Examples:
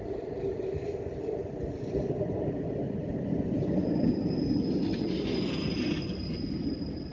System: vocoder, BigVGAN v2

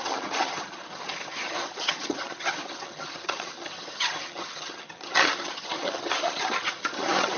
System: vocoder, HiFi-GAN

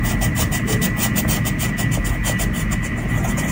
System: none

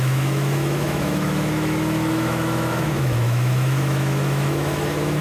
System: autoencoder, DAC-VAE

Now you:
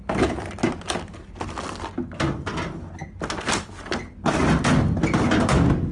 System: none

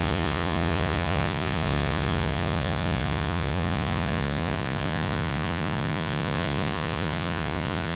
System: vocoder, Vocos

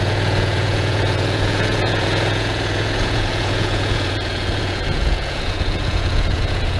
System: vocoder, Vocos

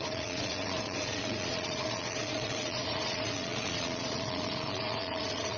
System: vocoder, Vocos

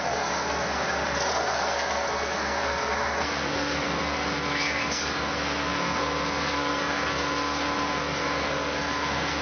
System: codec, SNAC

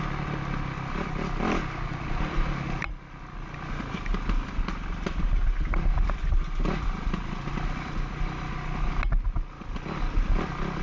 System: none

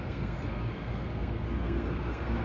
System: codec, SNAC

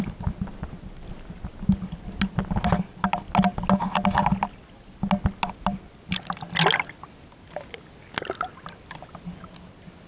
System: none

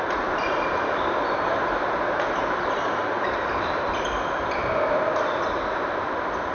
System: vocoder, BigVGAN v2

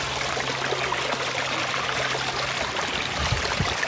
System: none